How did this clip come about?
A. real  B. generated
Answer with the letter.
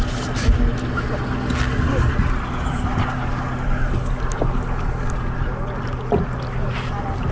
A